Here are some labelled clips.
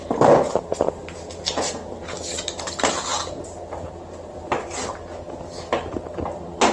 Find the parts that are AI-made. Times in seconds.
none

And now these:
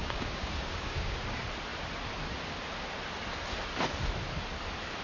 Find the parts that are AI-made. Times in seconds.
0.0-1.2 (codec, DAC)

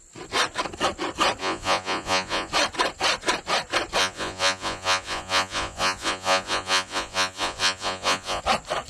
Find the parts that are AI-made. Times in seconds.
1.4-2.5 (vocoder, Vocos); 4.0-8.4

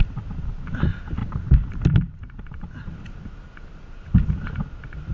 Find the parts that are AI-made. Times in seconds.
none

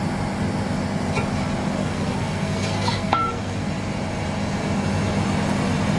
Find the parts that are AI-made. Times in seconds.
1.8-3.7 (codec, SNAC)

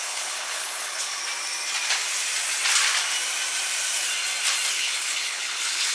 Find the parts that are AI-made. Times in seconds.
0.0-1.2 (codec, HILCodec); 4.7-5.9